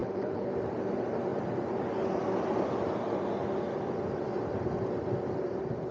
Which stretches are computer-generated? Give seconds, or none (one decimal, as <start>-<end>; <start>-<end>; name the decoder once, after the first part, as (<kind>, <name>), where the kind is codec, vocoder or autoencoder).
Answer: 0.0-0.5 (codec, HILCodec)